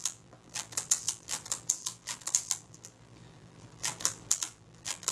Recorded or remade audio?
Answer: remade